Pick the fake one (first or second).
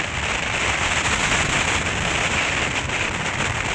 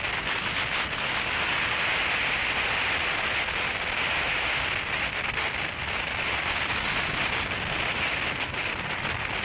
first